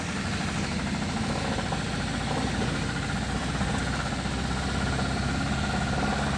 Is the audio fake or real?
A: real